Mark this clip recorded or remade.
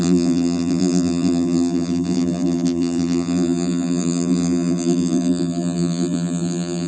remade